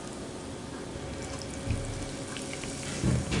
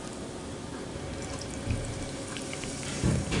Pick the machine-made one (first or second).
second